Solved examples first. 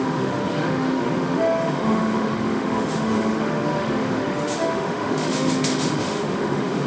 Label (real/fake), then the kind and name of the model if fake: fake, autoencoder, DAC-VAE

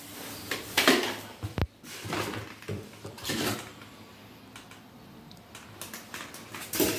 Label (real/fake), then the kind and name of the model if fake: real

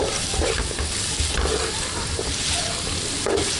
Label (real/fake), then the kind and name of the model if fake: real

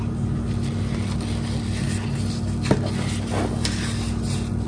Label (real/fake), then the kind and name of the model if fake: real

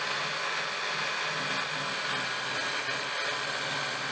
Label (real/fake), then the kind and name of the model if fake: real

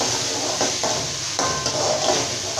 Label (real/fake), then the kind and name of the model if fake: real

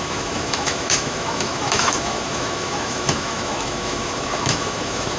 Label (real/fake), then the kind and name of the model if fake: fake, autoencoder, DAC-VAE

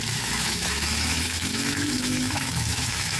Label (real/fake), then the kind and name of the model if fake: fake, autoencoder, DAC-VAE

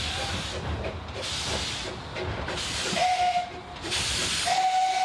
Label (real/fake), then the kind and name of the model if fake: real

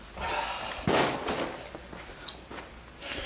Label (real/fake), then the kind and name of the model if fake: real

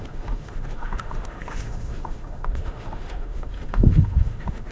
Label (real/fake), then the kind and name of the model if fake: fake, autoencoder, DAC-VAE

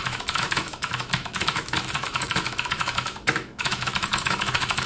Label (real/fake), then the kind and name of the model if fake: fake, autoencoder, DAC-VAE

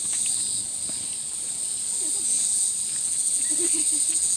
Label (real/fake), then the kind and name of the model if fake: real